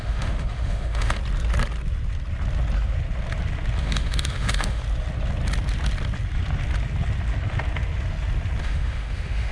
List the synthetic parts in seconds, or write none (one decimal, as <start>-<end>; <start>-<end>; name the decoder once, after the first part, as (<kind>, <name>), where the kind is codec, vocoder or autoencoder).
0.0-1.2 (autoencoder, DAC-VAE); 3.8-4.8; 8.6-9.5